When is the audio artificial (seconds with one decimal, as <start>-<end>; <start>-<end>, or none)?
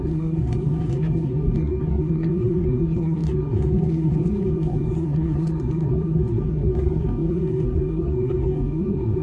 0.0-9.2